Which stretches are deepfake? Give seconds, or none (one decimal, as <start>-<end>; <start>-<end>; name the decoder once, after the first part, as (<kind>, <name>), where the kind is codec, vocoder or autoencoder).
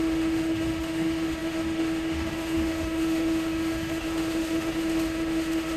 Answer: 0.0-5.8 (autoencoder, DAC-VAE)